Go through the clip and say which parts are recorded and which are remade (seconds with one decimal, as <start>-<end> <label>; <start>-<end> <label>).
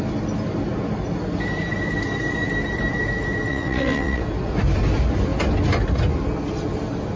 0.0-3.5 recorded; 3.5-4.2 remade; 4.2-7.2 recorded